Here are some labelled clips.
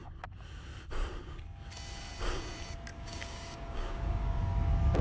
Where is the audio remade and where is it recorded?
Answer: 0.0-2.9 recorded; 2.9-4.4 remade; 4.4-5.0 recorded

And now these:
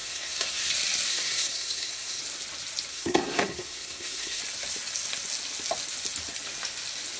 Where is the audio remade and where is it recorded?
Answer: 0.0-0.7 remade; 0.7-1.1 recorded; 1.1-2.2 remade; 2.2-2.9 recorded; 2.9-4.4 remade; 4.4-7.2 recorded